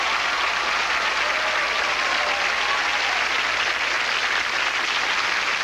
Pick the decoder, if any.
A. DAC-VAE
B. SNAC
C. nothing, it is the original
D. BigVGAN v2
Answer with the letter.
C